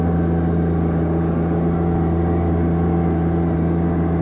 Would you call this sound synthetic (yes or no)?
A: no